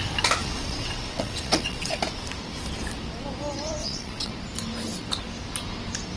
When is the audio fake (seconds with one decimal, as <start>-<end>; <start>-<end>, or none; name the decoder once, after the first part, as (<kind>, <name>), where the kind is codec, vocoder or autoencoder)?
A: 0.4-2.0 (vocoder, WaveNeXt); 3.8-4.3